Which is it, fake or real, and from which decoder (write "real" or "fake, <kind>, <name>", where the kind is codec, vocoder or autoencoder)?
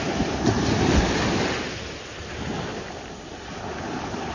real